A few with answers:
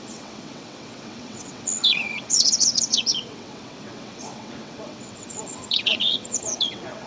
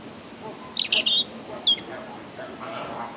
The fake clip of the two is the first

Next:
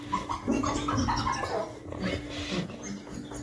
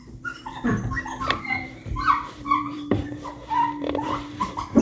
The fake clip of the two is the second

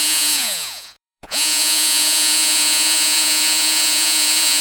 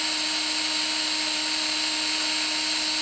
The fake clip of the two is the first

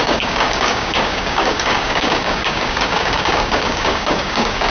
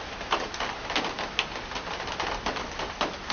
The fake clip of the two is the first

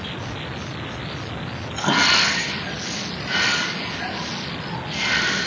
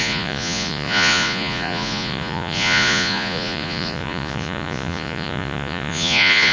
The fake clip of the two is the second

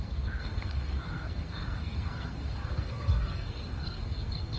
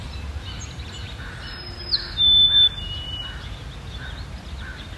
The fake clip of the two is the first